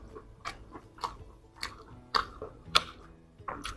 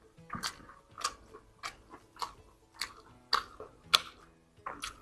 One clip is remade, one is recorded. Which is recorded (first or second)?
second